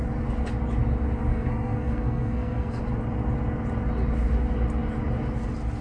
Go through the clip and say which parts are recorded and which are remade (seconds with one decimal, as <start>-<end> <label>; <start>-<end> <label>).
0.0-1.3 recorded; 1.3-2.8 remade; 2.8-5.8 recorded